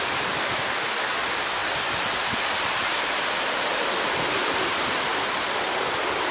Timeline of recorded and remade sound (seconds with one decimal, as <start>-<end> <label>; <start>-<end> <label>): 0.0-5.1 remade; 5.1-6.3 recorded